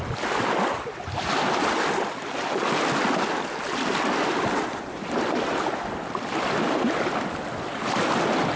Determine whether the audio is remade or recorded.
recorded